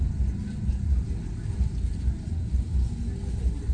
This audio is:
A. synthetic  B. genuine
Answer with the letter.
B